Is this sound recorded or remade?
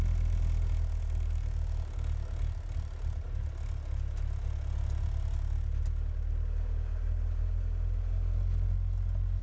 recorded